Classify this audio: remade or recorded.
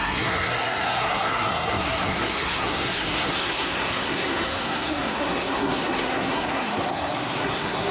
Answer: remade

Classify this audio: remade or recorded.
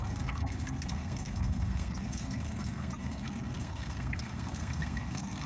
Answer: remade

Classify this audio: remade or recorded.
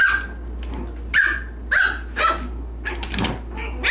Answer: recorded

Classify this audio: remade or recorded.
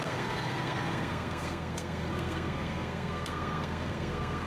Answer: remade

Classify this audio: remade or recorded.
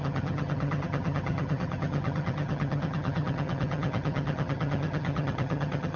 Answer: remade